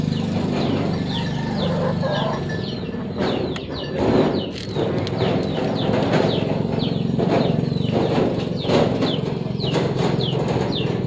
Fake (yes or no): no